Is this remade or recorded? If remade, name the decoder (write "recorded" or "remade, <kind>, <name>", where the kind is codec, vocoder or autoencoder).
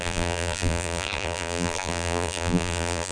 remade, vocoder, BigVGAN v2